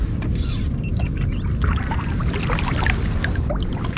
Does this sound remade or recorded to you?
recorded